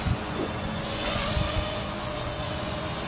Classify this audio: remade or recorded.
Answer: remade